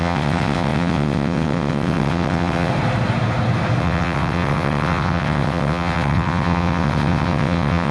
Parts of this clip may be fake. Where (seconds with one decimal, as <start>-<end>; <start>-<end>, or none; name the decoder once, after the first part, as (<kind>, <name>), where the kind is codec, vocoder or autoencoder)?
0.0-2.7 (vocoder, WaveNeXt); 3.8-7.9